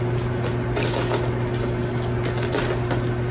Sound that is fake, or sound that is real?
real